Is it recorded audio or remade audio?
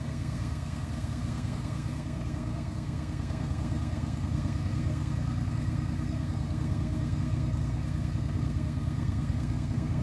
remade